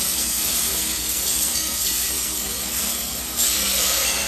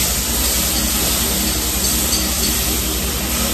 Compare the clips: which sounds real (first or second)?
second